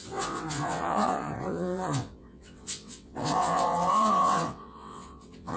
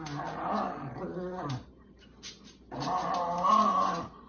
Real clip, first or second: second